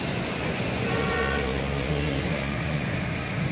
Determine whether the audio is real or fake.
fake